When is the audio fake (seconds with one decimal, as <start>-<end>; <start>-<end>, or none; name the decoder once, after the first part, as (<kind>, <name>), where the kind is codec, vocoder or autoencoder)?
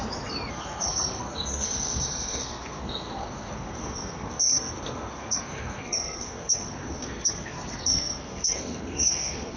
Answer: 0.5-9.6 (codec, SNAC)